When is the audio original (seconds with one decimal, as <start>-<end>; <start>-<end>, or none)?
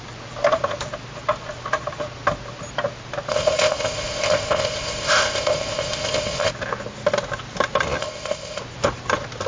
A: 0.0-3.3; 6.5-8.0; 8.6-9.5